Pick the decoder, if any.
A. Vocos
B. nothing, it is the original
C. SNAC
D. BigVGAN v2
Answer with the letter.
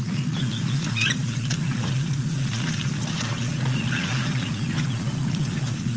A